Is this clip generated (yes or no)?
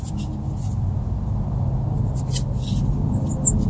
no